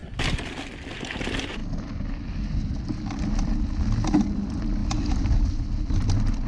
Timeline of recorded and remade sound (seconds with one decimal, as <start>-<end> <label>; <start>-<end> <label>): 0.0-6.5 recorded